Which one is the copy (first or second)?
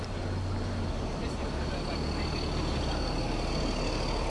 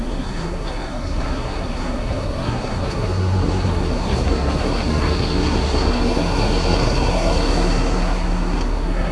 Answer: second